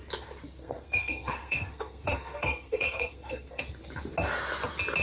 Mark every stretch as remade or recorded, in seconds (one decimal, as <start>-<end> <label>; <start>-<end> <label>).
0.0-0.6 recorded; 0.6-3.6 remade; 3.6-5.0 recorded